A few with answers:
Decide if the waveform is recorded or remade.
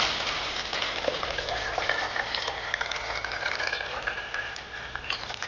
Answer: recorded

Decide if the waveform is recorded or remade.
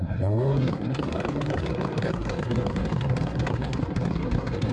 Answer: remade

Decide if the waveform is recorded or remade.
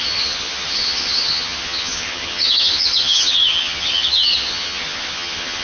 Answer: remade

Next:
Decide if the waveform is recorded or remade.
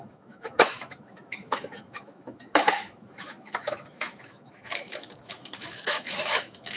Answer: remade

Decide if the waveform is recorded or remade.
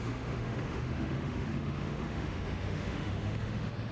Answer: remade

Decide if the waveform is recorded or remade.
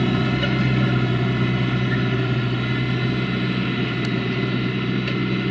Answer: recorded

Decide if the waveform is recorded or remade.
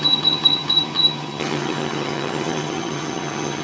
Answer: remade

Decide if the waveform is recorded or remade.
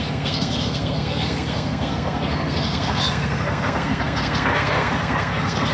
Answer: remade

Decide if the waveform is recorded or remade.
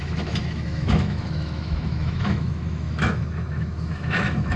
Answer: remade